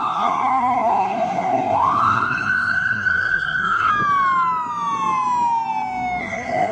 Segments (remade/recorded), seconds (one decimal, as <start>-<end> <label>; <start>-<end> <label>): 0.0-3.9 remade; 3.9-6.2 recorded; 6.2-6.7 remade